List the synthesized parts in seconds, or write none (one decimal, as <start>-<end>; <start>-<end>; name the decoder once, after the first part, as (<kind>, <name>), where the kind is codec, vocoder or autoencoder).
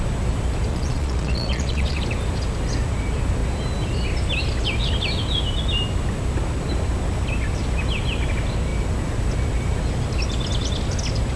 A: 0.7-2.0 (vocoder, Vocos)